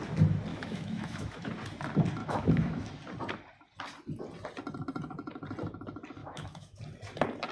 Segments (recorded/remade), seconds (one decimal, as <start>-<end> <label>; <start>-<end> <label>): 0.0-0.5 recorded; 0.5-1.5 remade; 1.5-2.2 recorded; 2.2-2.9 remade; 2.9-6.2 recorded; 6.2-6.8 remade; 6.8-7.5 recorded